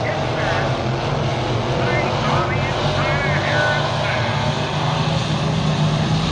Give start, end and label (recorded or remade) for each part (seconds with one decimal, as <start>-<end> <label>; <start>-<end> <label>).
0.0-6.3 recorded